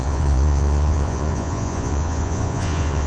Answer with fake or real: fake